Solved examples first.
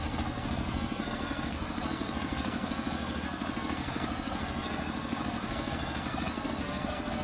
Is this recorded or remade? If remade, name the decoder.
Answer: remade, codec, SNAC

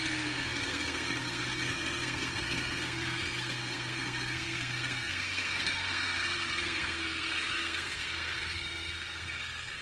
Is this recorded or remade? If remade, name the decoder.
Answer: remade, codec, SNAC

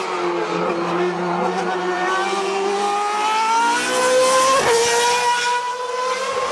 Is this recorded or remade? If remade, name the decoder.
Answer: recorded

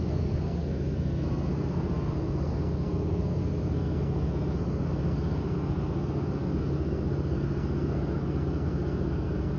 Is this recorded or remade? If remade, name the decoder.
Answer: remade, codec, SNAC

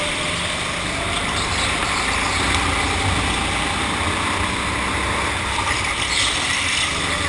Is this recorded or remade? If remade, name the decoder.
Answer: recorded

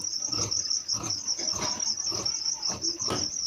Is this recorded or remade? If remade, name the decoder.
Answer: recorded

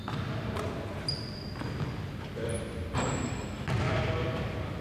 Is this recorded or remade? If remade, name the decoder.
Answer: recorded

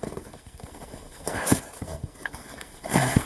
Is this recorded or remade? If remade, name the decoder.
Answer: remade, codec, SNAC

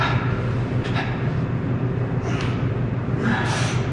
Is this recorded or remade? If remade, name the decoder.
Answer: recorded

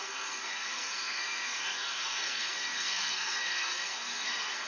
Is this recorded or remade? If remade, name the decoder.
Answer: remade, codec, SNAC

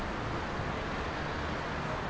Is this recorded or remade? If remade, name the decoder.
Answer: recorded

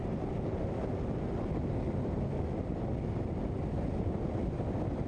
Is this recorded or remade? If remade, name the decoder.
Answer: recorded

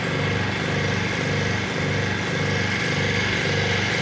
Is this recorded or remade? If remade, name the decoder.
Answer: recorded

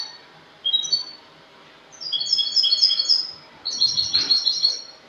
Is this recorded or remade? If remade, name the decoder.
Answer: recorded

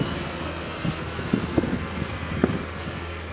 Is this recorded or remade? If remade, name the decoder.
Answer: remade, codec, SNAC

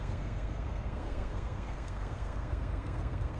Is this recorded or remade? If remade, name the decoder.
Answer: remade, codec, SNAC